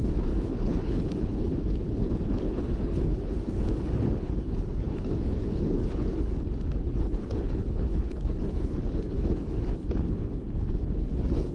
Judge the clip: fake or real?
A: fake